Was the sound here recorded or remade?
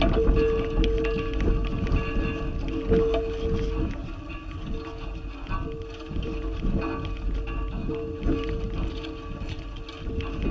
recorded